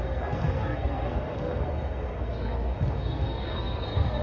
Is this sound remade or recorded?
remade